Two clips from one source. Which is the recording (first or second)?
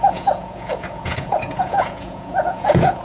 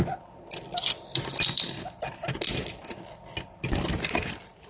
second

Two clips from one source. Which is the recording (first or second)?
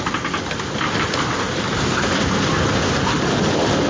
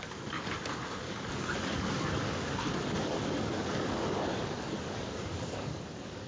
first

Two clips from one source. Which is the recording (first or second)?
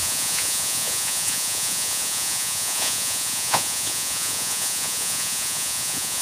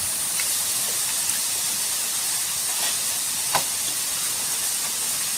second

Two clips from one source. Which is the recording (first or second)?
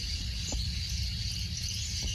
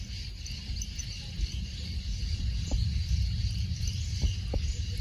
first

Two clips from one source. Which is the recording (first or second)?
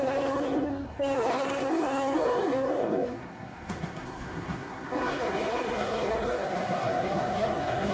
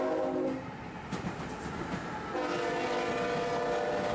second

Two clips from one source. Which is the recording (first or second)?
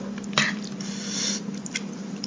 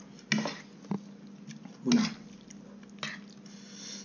second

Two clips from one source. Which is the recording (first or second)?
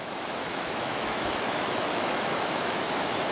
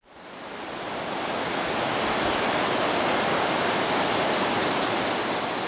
second